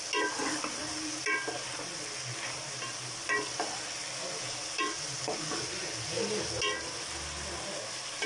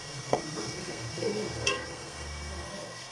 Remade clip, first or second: second